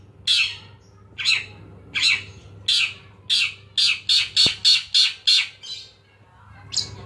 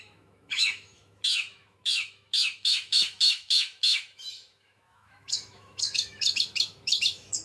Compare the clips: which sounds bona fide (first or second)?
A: first